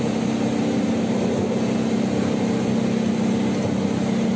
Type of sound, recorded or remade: recorded